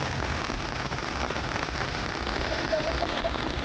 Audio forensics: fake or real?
fake